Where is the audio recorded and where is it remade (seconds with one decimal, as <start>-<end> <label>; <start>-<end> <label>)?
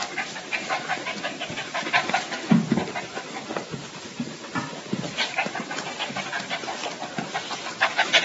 0.0-8.2 recorded